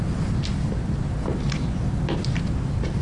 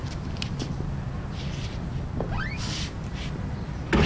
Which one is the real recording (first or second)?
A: second